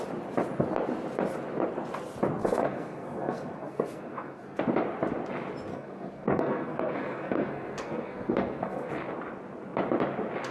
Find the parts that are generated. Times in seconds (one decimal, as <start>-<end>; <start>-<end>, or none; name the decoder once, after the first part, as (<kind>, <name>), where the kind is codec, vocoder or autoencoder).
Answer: 2.4-4.6 (codec, SNAC); 5.7-8.9